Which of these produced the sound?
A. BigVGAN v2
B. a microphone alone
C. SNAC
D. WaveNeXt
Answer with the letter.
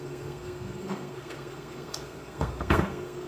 C